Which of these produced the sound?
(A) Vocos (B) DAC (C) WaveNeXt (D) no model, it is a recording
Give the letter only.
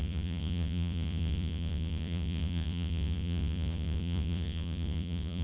A